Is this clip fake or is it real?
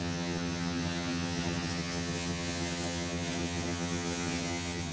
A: fake